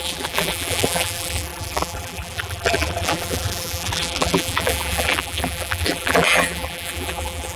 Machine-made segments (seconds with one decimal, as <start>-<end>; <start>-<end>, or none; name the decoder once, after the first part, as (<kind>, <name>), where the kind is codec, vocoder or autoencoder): 0.0-7.6 (vocoder, BigVGAN v2)